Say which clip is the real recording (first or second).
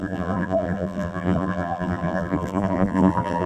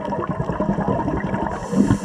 second